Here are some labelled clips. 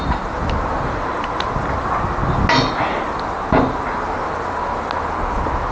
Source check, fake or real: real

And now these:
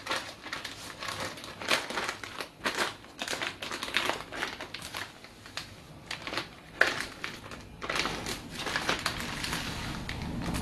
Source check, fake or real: real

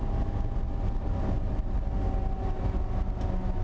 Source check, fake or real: real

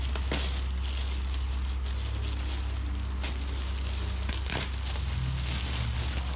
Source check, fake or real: real